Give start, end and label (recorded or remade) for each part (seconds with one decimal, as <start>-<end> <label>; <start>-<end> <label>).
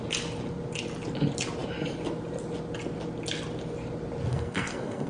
0.0-4.3 recorded; 4.3-5.1 remade